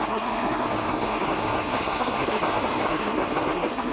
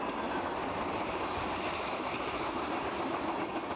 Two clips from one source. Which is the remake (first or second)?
first